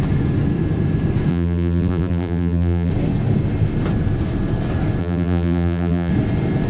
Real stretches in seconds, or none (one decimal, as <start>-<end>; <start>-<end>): 0.0-1.3; 2.9-5.0; 6.1-6.7